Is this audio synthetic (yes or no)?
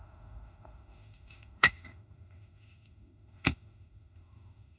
yes